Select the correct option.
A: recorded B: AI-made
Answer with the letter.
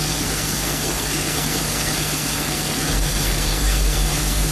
B